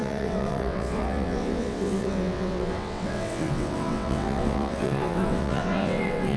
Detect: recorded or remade remade